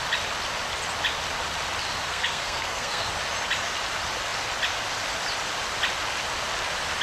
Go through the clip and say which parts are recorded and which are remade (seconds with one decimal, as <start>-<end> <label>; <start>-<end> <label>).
0.0-2.0 recorded; 2.0-3.1 remade; 3.1-7.0 recorded